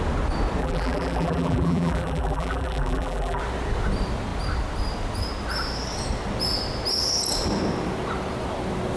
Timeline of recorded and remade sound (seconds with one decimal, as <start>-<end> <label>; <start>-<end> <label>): 0.0-0.6 recorded; 0.6-3.4 remade; 3.4-9.0 recorded